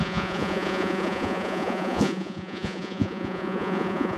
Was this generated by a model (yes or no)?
yes